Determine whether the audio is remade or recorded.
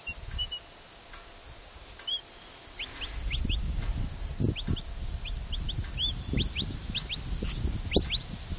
recorded